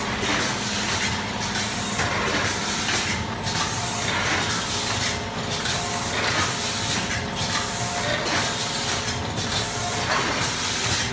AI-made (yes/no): no